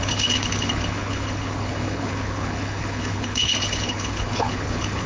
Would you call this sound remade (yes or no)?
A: yes